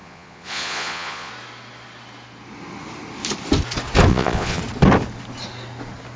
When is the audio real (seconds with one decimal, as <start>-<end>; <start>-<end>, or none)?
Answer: 1.3-4.1; 4.6-6.2